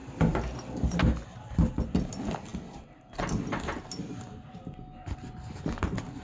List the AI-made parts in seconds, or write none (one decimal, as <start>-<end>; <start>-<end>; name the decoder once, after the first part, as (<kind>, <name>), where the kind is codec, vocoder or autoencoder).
none